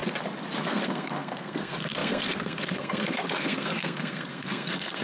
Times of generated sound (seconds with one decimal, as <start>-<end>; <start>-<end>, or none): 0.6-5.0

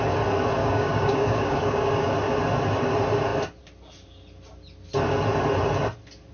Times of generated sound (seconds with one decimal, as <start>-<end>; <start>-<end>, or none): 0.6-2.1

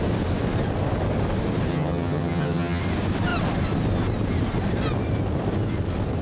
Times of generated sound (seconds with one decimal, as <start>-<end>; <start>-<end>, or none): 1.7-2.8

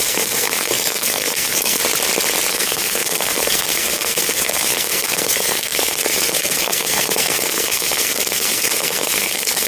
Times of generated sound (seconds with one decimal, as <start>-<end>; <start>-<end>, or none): 0.0-1.8; 2.5-9.7

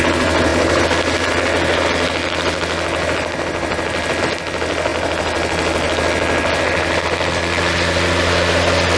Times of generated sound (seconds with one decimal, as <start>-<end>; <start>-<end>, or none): none